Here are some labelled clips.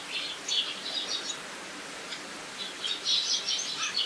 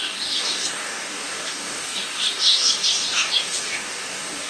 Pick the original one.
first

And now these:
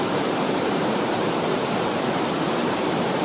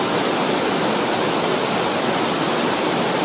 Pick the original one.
second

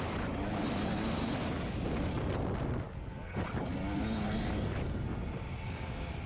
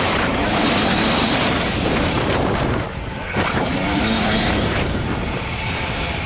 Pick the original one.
first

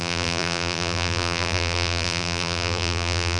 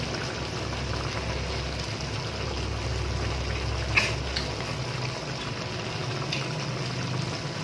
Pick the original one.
second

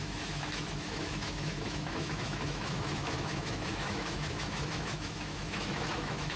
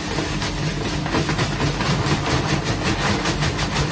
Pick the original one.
second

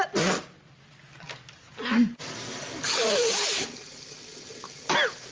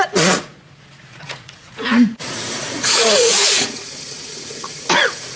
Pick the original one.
first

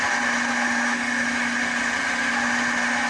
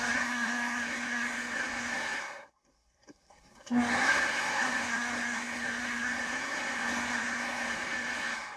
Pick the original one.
first